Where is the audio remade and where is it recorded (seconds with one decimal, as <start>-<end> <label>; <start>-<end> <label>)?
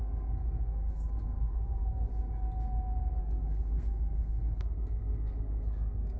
0.0-2.1 remade; 2.1-3.2 recorded; 3.2-6.2 remade